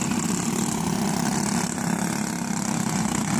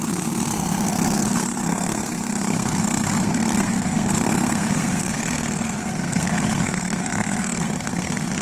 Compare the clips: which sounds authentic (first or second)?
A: first